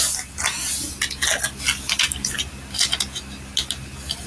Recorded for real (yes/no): yes